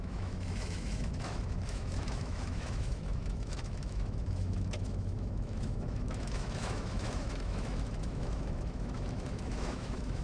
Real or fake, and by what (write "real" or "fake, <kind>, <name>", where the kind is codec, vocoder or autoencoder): fake, autoencoder, DAC-VAE